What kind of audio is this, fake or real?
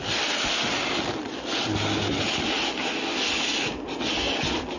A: real